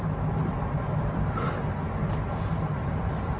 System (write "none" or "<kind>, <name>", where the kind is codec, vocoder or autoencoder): vocoder, BigVGAN v2